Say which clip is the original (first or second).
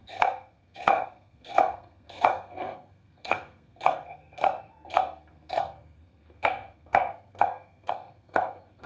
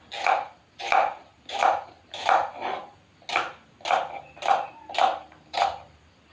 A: second